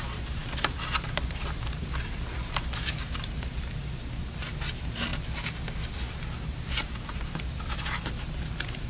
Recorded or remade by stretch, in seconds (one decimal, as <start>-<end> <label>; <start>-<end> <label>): 0.0-5.1 remade; 5.1-6.1 recorded; 6.1-8.9 remade